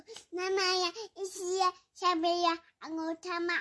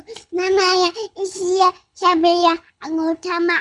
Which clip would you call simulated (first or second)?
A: second